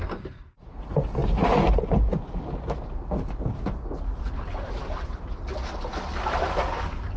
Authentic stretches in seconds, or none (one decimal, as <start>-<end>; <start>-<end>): 0.0-7.2